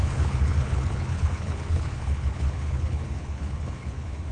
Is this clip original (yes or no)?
no